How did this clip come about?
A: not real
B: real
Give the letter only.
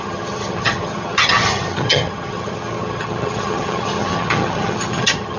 A